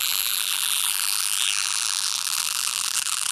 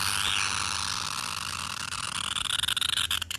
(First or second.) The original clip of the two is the second